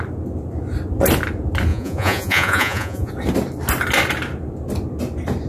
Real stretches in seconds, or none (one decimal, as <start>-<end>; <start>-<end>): 0.0-1.7; 3.1-5.5